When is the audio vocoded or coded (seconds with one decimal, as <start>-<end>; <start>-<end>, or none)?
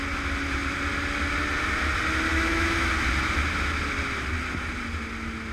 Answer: 2.3-2.9